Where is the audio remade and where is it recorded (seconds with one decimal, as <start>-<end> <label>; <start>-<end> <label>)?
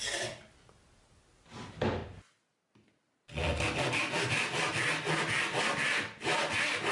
0.0-6.9 recorded